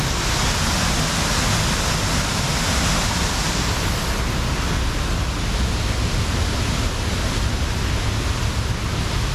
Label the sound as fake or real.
real